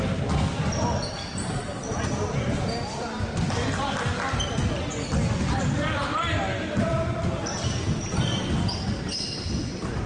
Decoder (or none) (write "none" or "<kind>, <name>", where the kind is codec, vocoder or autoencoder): none